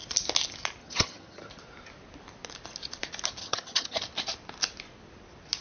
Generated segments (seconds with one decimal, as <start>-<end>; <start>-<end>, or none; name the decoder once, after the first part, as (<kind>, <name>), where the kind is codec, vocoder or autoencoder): 0.8-1.5 (vocoder, HiFi-GAN); 3.4-4.0